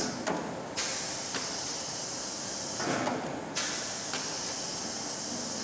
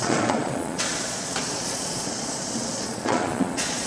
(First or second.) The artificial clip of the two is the second